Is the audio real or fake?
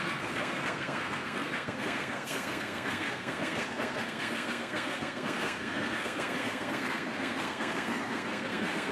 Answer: fake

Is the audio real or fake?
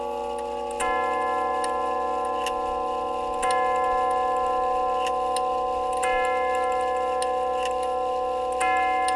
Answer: real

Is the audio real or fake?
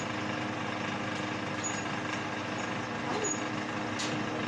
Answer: real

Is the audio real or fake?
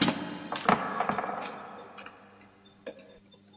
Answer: real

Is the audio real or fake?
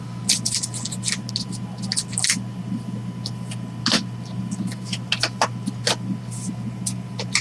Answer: real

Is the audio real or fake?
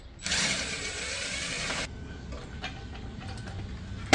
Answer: real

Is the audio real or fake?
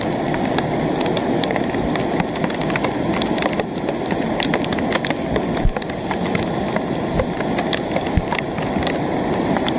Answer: real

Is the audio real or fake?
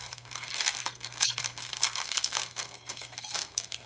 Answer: fake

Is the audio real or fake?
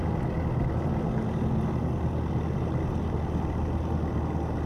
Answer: real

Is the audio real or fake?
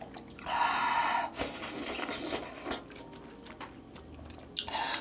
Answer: real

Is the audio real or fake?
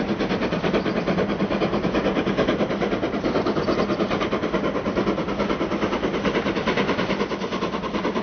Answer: real